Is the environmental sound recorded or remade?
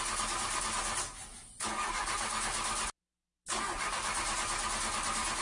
recorded